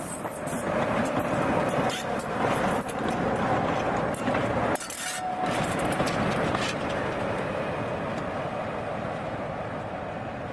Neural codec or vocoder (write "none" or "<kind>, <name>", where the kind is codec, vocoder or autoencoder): none